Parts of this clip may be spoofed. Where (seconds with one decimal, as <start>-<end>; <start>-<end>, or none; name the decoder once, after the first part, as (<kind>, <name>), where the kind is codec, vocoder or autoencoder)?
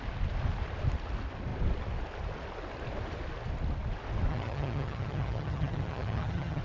4.3-6.6 (vocoder, HiFi-GAN)